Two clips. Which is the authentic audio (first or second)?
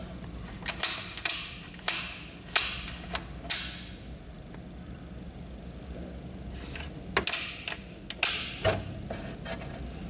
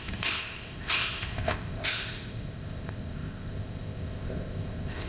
first